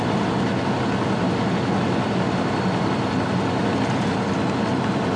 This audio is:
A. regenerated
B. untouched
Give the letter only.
B